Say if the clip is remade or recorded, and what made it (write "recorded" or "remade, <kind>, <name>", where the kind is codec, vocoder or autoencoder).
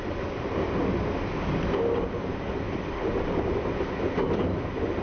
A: recorded